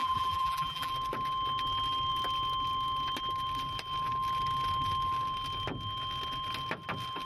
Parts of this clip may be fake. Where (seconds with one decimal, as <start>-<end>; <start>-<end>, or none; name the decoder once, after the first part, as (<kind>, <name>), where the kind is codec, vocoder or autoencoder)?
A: 0.0-0.9 (vocoder, BigVGAN v2)